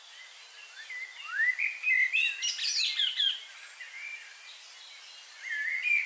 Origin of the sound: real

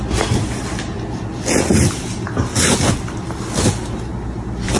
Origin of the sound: real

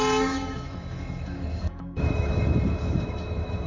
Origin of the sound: fake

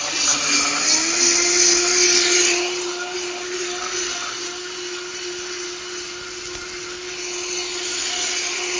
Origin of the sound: real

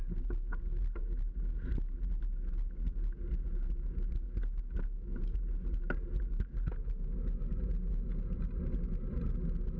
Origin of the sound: real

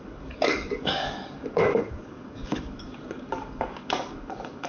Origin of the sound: fake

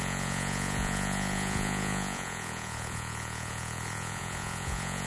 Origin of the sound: fake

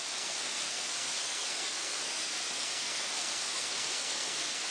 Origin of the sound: fake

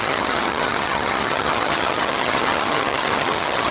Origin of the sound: fake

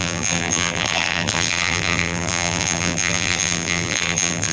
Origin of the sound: fake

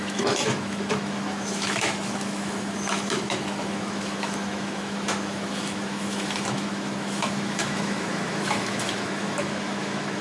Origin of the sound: fake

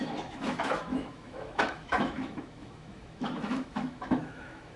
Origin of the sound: fake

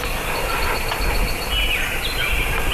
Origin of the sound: real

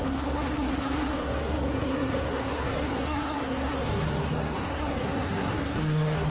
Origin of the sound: fake